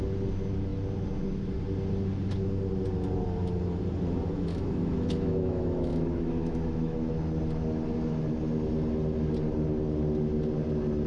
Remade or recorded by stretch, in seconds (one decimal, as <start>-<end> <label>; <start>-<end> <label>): 0.0-4.5 recorded; 4.5-7.1 remade; 7.1-11.1 recorded